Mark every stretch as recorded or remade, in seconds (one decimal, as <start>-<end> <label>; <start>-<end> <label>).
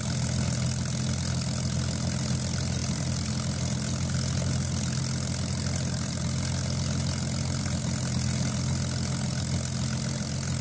0.0-10.6 recorded